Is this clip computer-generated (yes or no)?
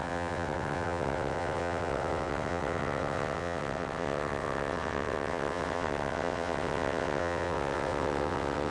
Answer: yes